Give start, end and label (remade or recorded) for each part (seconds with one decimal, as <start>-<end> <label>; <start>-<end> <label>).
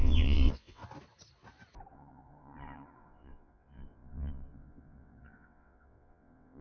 0.0-0.8 remade; 0.8-1.9 recorded; 1.9-6.6 remade